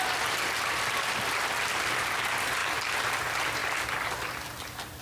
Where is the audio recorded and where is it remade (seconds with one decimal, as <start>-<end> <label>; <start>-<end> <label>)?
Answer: 0.0-5.0 recorded